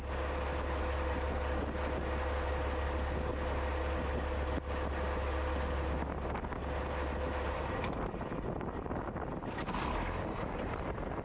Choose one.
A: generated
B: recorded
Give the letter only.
B